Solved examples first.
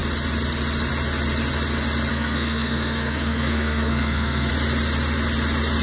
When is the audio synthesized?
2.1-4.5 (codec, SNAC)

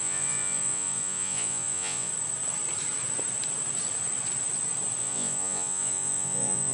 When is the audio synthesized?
0.0-2.1 (vocoder, Vocos); 5.0-6.7

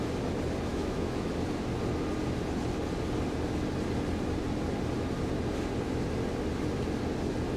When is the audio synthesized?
0.7-1.3 (autoencoder, DAC-VAE)